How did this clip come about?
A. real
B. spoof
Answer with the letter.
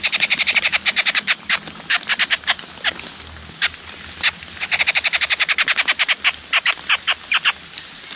A